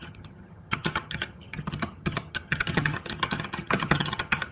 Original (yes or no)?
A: no